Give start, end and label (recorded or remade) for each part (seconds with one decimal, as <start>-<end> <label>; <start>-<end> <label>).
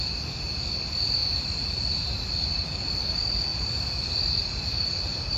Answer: 0.0-1.2 recorded; 1.2-2.6 remade; 2.6-3.5 recorded; 3.5-5.4 remade